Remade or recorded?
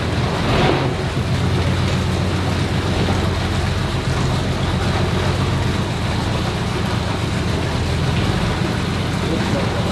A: recorded